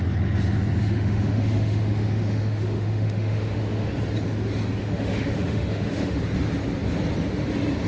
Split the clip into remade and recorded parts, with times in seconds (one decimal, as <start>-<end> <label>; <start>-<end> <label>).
0.0-0.8 recorded; 0.8-3.9 remade; 3.9-4.8 recorded; 4.8-6.2 remade; 6.2-7.9 recorded